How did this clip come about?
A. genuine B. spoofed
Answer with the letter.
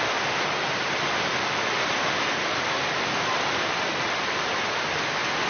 A